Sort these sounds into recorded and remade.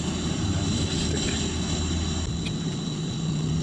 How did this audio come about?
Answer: recorded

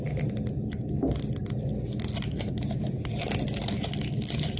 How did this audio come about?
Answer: recorded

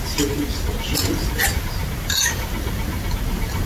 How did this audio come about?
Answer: recorded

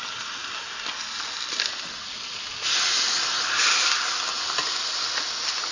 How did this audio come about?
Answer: recorded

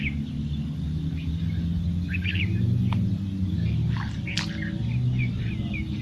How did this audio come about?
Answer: recorded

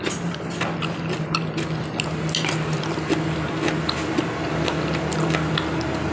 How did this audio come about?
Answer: recorded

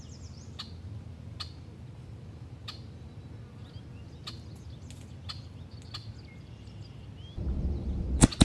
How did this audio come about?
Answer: recorded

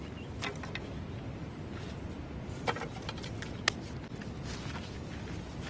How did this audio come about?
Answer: recorded